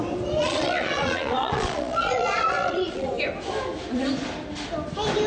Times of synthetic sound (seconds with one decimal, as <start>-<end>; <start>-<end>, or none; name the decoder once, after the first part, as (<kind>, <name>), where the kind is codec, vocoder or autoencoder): 0.4-3.1 (vocoder, Vocos)